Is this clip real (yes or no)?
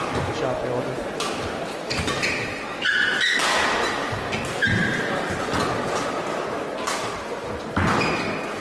yes